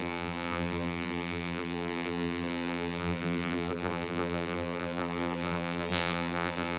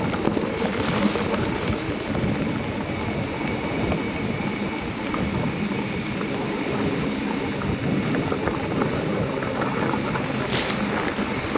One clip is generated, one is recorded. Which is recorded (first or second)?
second